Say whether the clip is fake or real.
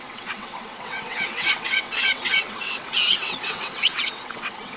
fake